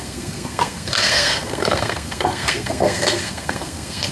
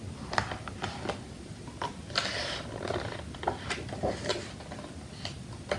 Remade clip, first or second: first